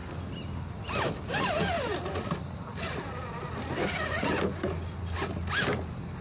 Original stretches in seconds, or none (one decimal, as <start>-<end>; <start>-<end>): 0.0-6.2